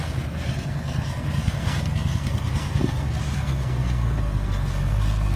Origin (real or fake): fake